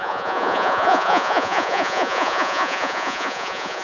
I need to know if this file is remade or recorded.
remade